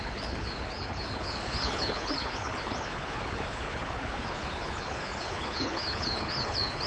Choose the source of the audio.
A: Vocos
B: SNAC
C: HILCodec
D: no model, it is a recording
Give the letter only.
C